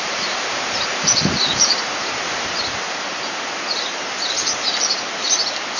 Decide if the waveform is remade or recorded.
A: remade